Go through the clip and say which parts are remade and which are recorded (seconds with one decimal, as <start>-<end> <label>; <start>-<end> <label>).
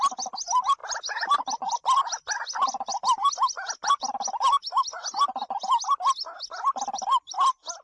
0.0-7.8 recorded